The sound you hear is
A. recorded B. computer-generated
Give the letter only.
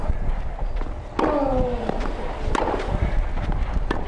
A